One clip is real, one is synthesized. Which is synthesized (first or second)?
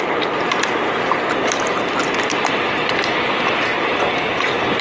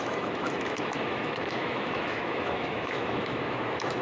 second